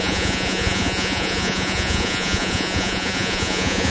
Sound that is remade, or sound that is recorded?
remade